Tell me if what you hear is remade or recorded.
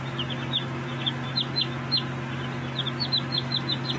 recorded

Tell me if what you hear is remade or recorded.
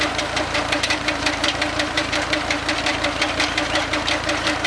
remade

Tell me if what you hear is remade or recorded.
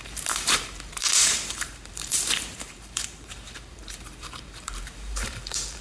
remade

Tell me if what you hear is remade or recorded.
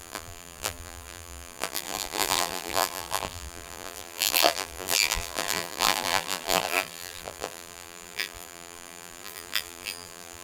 remade